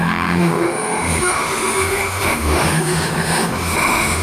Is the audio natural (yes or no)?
no